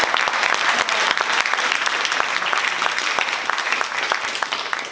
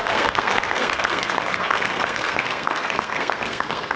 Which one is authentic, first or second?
first